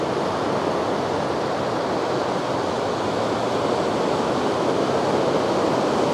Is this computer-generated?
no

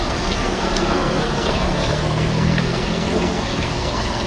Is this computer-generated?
yes